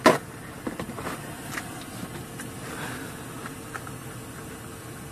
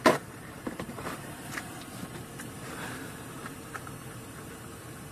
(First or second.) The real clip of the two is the first